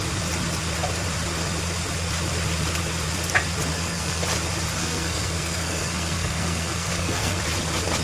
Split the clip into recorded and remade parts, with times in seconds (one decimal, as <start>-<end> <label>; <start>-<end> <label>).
0.0-3.7 recorded; 3.7-4.2 remade; 4.2-4.8 recorded; 4.8-7.4 remade; 7.4-8.0 recorded